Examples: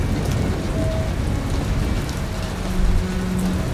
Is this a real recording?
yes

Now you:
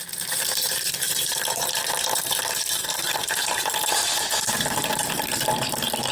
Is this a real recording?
no